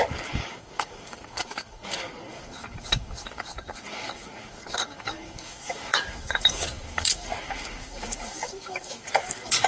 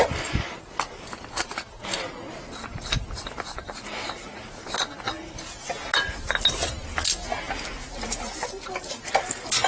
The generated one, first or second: first